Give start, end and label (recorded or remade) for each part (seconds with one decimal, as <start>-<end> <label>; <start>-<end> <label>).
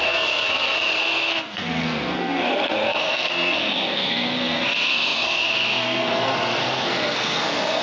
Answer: 0.0-7.8 remade